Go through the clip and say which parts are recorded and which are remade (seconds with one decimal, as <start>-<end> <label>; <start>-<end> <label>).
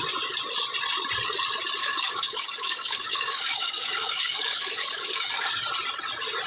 0.0-1.8 recorded; 1.8-5.5 remade; 5.5-6.5 recorded